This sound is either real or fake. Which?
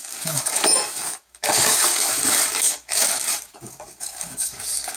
fake